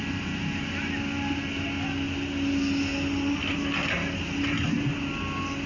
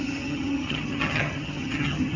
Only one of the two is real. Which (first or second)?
first